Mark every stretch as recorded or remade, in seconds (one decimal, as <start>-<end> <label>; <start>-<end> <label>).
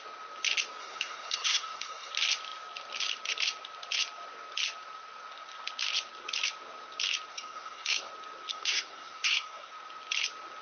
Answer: 0.0-0.8 recorded; 0.8-2.1 remade; 2.1-7.3 recorded; 7.3-8.1 remade; 8.1-8.5 recorded; 8.5-9.7 remade; 9.7-10.6 recorded